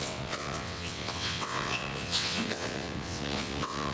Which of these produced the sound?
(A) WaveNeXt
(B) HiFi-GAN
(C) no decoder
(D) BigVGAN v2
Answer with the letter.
A